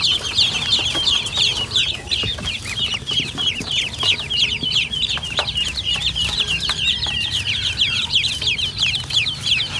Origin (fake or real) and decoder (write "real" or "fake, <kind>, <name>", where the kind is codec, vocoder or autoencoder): fake, vocoder, BigVGAN v2